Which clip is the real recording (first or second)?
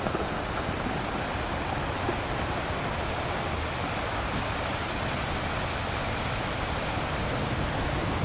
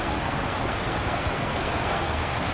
first